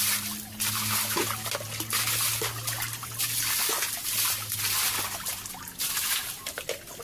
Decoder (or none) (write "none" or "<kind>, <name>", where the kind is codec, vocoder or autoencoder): none